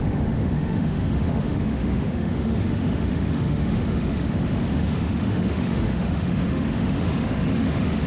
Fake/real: fake